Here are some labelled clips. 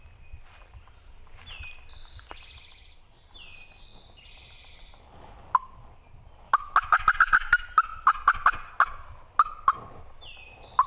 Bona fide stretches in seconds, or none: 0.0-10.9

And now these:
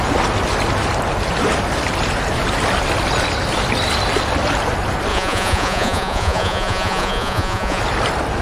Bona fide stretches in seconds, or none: 0.0-5.1; 7.8-8.4

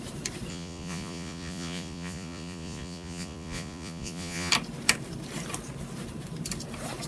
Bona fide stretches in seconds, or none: 0.0-0.5; 4.5-7.1

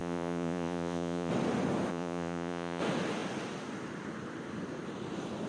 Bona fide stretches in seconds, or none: 1.3-1.9; 2.8-5.5

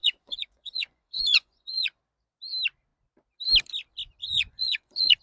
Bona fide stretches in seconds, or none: 2.0-4.2

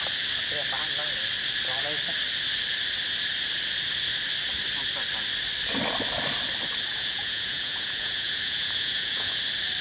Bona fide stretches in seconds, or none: 0.0-6.9; 9.4-9.8

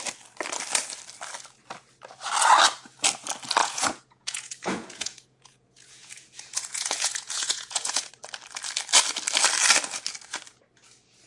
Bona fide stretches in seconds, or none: 0.0-3.6; 8.1-11.3

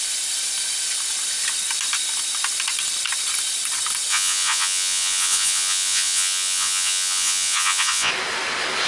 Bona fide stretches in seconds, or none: 0.0-4.1; 8.1-8.9